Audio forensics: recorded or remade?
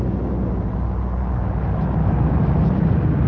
recorded